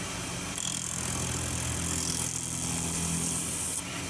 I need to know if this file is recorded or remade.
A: recorded